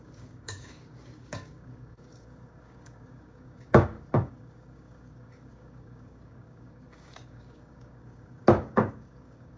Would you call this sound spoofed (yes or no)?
yes